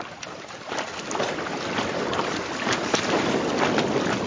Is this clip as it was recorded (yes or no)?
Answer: no